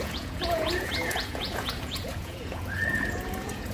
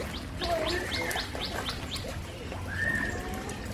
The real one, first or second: second